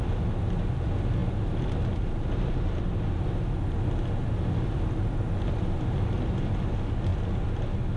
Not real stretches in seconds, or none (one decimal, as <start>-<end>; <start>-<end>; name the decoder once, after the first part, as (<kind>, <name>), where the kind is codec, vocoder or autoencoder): none